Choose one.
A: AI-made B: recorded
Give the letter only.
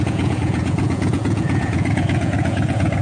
A